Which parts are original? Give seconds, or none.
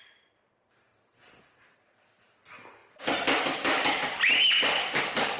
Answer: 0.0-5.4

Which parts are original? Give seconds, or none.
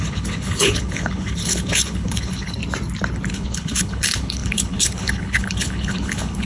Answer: 2.6-3.3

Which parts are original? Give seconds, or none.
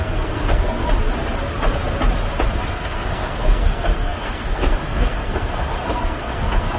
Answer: 0.8-2.7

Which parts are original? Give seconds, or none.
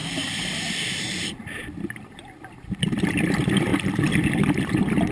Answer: 3.1-3.7; 4.4-5.1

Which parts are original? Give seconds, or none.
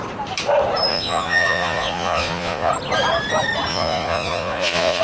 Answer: 0.0-0.9; 2.7-3.7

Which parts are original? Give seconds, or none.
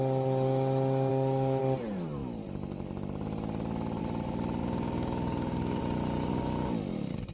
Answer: 0.0-1.1; 1.6-4.6; 5.8-7.3